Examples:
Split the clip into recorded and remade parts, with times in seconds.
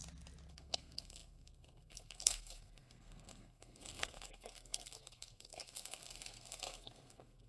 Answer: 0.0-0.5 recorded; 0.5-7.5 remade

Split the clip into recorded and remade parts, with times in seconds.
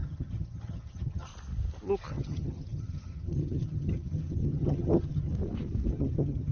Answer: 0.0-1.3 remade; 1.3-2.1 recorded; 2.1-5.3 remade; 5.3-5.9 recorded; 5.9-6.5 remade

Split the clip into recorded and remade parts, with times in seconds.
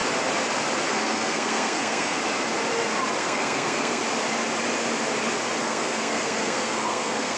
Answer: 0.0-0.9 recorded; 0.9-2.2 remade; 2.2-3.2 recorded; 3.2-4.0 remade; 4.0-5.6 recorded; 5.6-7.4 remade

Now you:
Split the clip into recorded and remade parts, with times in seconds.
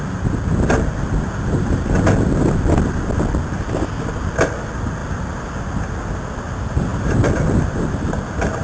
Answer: 0.0-8.6 recorded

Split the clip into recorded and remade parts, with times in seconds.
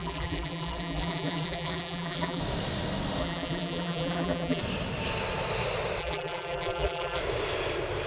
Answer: 0.0-2.4 remade; 2.4-3.2 recorded; 3.2-4.6 remade; 4.6-6.0 recorded; 6.0-7.2 remade; 7.2-8.1 recorded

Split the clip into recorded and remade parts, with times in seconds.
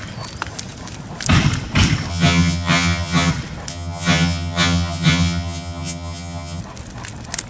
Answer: 0.0-2.1 recorded; 2.1-3.3 remade; 3.3-3.7 recorded; 3.7-6.6 remade; 6.6-7.5 recorded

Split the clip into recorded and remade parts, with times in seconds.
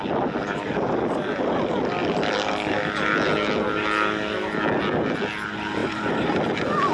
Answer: 0.0-5.8 recorded; 5.8-6.4 remade; 6.4-6.9 recorded